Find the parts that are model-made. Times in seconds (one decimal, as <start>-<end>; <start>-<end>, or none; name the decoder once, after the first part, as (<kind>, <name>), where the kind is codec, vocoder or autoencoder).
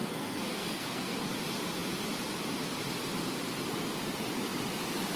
0.0-1.3 (codec, SNAC)